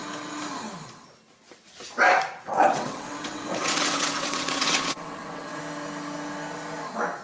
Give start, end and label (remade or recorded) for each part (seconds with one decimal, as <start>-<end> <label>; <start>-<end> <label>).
0.0-2.5 recorded; 2.5-5.6 remade; 5.6-7.2 recorded